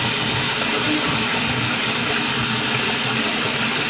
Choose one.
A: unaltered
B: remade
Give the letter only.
A